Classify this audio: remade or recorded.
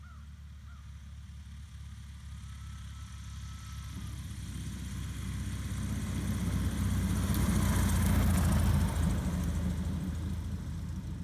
recorded